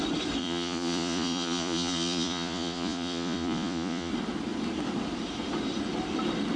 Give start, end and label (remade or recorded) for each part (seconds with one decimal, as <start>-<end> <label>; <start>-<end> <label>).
0.0-0.4 recorded; 0.4-4.1 remade; 4.1-6.6 recorded